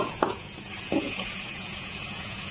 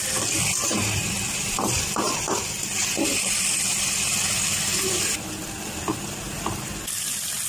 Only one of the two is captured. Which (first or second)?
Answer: second